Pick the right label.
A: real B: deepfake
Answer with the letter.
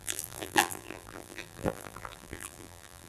B